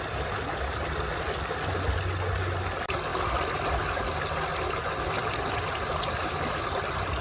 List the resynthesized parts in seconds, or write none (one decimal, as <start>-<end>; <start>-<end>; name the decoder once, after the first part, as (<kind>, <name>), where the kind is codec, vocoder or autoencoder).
none